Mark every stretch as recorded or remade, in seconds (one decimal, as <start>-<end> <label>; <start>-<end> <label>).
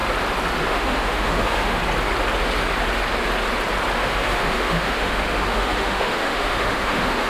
0.0-0.7 recorded; 0.7-1.8 remade; 1.8-4.0 recorded; 4.0-7.3 remade